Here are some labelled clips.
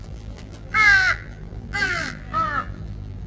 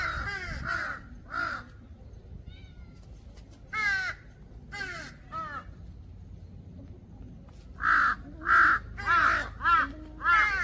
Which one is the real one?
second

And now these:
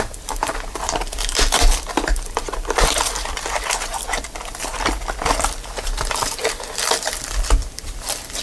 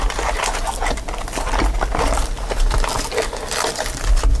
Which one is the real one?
second